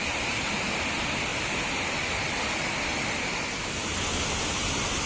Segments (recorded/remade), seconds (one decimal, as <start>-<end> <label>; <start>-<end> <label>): 0.0-5.1 recorded